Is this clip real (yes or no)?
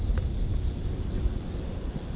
yes